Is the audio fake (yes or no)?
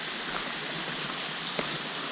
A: no